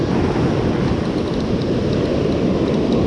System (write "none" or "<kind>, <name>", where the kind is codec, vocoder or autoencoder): none